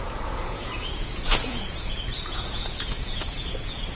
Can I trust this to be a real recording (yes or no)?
no